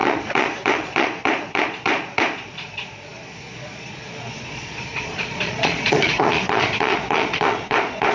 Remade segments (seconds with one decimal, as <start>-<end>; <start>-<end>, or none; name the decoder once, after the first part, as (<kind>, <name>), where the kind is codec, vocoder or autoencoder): 0.0-8.1 (vocoder, Vocos)